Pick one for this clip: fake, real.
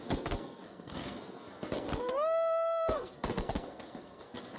fake